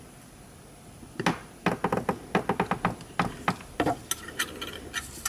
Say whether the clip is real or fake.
real